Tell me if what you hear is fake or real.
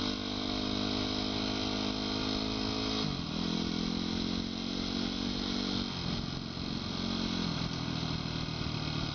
real